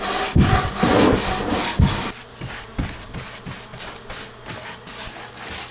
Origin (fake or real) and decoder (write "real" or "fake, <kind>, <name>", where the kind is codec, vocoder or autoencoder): real